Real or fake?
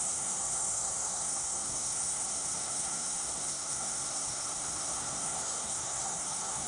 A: fake